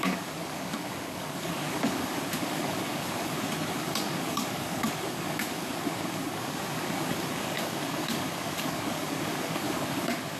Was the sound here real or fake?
fake